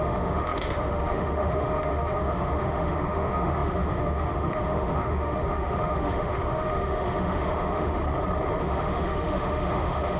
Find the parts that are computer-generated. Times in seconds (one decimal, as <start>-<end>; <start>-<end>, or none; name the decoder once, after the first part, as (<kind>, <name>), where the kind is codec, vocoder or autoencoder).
0.0-8.0 (autoencoder, DAC-VAE); 8.6-10.2